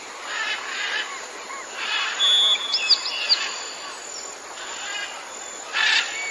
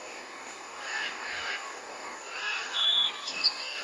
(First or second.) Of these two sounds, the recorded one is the first